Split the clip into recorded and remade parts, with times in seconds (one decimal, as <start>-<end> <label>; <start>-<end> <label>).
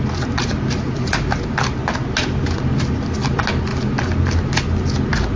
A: 0.0-5.4 recorded